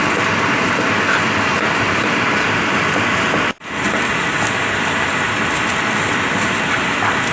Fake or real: real